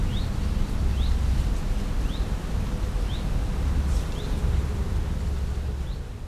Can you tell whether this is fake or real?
real